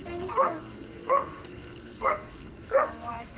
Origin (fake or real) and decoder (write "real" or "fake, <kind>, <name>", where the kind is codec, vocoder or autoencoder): fake, codec, SNAC